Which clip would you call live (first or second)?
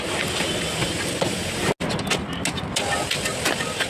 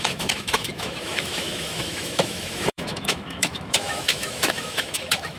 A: first